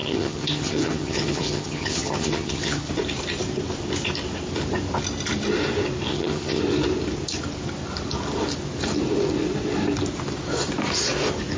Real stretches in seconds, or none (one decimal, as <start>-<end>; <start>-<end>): 2.9-6.1; 6.6-11.6